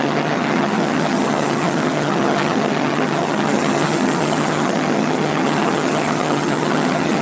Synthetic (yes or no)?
yes